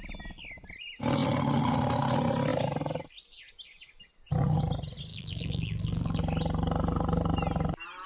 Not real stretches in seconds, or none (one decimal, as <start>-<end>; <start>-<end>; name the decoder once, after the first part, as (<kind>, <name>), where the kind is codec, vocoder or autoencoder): 5.1-6.2 (vocoder, BigVGAN v2)